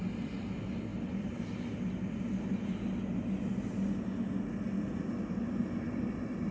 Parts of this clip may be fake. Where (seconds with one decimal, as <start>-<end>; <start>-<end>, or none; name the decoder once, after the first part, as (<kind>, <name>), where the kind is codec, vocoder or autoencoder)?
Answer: 0.0-0.9 (vocoder, BigVGAN v2); 4.8-6.5